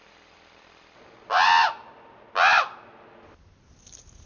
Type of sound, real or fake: real